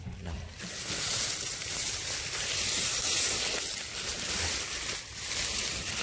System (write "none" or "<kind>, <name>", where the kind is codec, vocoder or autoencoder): none